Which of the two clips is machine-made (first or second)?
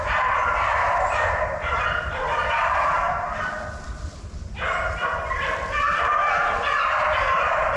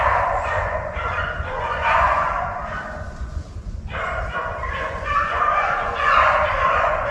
second